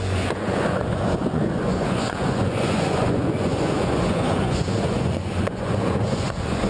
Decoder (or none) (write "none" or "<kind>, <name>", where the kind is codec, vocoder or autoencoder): vocoder, Vocos